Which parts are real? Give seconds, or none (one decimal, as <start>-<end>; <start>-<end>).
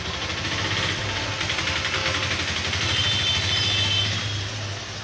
0.0-5.0